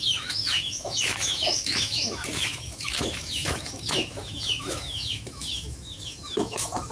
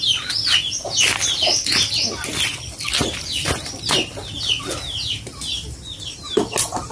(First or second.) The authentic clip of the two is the second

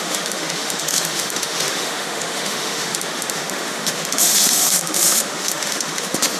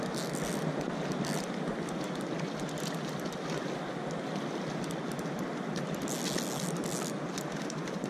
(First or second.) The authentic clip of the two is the second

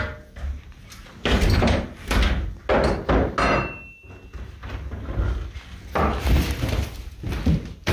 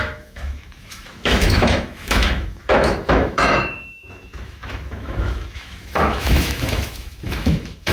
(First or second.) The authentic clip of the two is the first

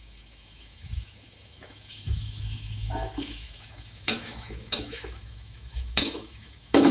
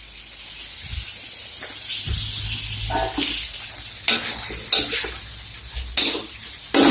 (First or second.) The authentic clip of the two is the second